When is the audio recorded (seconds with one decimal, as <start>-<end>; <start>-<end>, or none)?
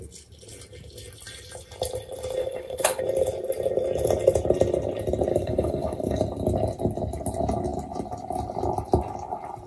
0.0-2.4; 3.0-5.3; 6.2-9.7